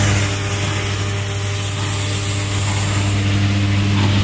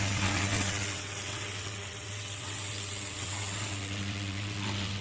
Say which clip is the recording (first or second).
first